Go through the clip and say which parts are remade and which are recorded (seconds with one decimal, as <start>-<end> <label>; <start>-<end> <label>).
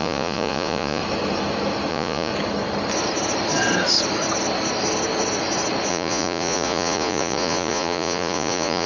0.0-1.0 remade; 1.0-1.9 recorded; 1.9-2.3 remade; 2.3-5.9 recorded; 5.9-8.9 remade